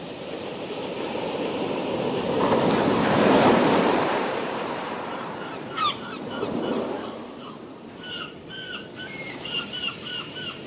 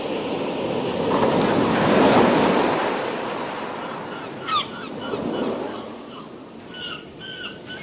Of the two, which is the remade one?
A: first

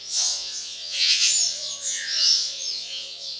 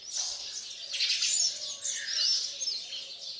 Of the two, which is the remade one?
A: first